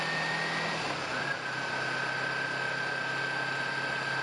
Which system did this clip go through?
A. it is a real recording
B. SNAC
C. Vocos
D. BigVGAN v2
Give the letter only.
A